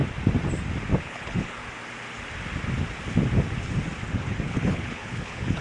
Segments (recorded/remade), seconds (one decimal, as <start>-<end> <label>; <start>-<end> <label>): 0.0-1.0 recorded; 1.0-1.6 remade; 1.6-4.1 recorded; 4.1-5.6 remade